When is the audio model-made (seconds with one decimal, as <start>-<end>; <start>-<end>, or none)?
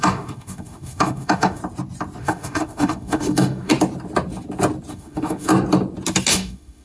0.0-1.6; 2.2-3.7; 4.9-5.5; 6.3-6.8